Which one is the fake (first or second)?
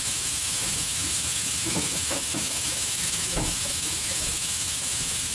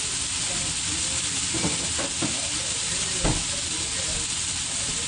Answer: first